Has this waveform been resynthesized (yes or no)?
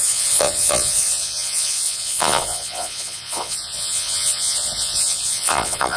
yes